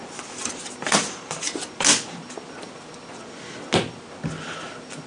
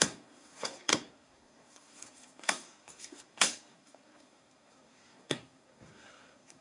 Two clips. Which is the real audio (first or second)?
first